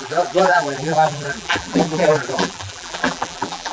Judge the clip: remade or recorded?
remade